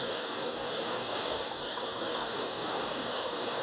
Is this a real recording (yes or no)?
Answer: no